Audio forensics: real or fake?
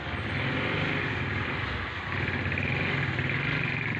real